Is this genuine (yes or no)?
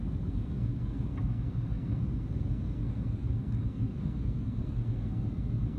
no